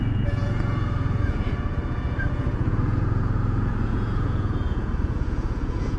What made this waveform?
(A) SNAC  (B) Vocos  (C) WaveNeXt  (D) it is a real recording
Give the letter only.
B